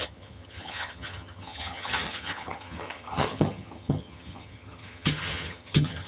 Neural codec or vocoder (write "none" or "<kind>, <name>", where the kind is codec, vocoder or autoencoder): vocoder, HiFi-GAN